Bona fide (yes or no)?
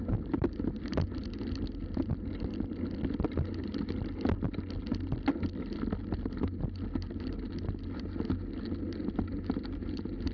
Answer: yes